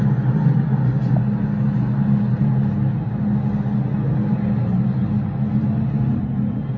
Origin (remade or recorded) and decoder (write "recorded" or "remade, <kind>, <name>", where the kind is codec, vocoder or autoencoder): recorded